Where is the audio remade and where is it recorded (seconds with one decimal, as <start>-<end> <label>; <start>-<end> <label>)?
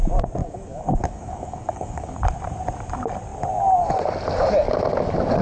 0.0-0.4 recorded; 0.4-2.2 remade; 2.2-5.4 recorded